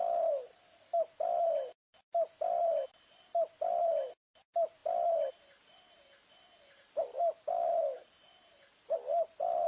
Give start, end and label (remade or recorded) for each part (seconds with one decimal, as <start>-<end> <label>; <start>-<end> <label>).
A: 0.0-9.7 recorded